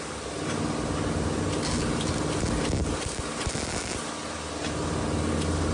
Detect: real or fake real